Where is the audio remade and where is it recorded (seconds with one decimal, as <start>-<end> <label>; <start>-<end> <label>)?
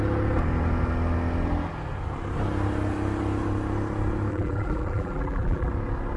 0.0-4.3 recorded; 4.3-5.7 remade; 5.7-6.2 recorded